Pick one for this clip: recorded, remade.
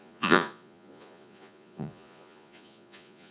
remade